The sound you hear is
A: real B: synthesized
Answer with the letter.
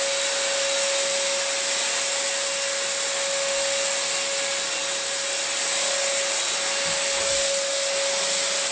A